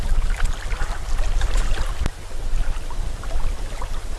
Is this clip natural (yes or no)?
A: yes